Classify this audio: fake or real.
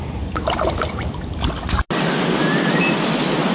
real